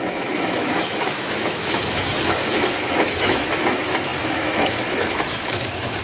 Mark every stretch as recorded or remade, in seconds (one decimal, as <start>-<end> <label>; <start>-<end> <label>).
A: 0.0-6.0 remade